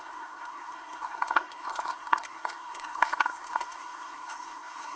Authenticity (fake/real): fake